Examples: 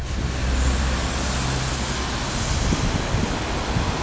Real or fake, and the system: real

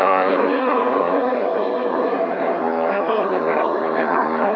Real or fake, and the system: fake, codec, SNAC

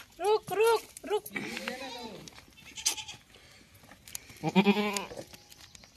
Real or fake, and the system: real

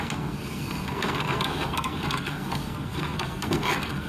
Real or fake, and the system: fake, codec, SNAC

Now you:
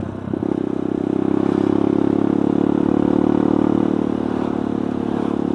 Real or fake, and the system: real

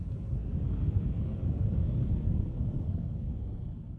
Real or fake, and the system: fake, codec, SNAC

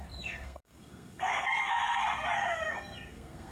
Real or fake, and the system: fake, codec, SNAC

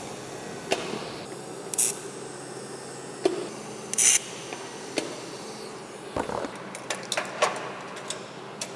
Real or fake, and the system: real